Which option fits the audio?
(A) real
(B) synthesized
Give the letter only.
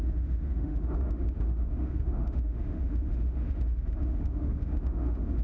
B